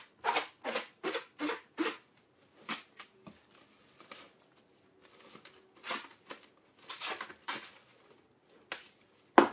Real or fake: real